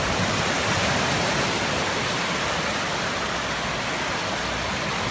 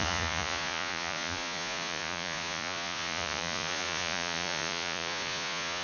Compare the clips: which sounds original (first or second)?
first